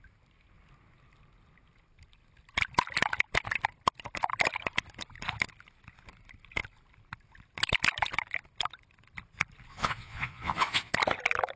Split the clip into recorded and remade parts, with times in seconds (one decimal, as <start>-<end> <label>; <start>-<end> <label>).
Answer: 0.0-9.7 recorded; 9.7-10.9 remade; 10.9-11.6 recorded